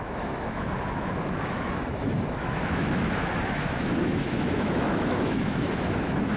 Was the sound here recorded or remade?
remade